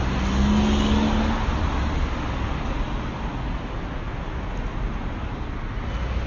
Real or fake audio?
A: real